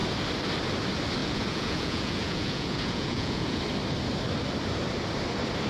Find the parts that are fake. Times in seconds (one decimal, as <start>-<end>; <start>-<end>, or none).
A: 1.2-3.6